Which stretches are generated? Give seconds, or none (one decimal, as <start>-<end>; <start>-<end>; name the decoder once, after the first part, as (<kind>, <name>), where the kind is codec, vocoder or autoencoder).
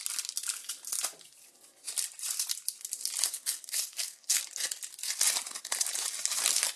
3.2-4.4 (codec, SNAC)